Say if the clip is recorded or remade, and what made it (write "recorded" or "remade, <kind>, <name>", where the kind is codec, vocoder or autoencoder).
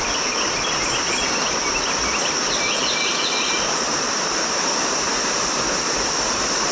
recorded